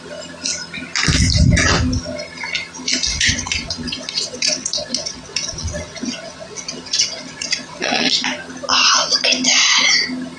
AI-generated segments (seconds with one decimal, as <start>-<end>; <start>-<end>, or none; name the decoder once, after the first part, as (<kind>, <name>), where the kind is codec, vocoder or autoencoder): 3.1-8.1 (vocoder, WaveNeXt)